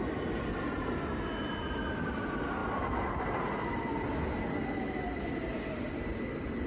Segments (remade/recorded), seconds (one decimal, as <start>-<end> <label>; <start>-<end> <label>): 0.0-0.5 recorded; 0.5-1.0 remade; 1.0-6.7 recorded